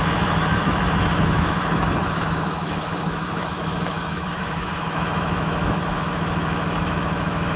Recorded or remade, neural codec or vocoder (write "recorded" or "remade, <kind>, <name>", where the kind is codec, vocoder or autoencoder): remade, autoencoder, DAC-VAE